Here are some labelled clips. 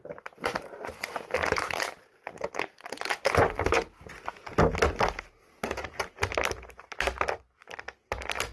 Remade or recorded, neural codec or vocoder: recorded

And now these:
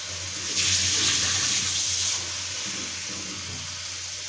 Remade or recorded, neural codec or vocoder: recorded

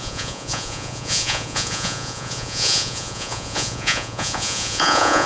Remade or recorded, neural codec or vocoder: remade, vocoder, Vocos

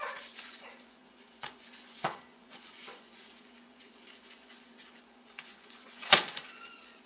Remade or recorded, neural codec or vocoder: remade, vocoder, Vocos